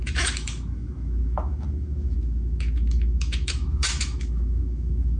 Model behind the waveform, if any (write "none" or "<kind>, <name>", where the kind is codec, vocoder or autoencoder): autoencoder, DAC-VAE